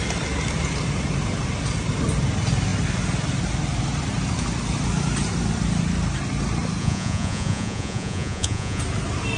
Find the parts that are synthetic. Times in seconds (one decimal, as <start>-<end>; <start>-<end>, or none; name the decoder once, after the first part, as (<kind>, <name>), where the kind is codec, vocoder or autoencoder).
6.8-8.8 (vocoder, Vocos)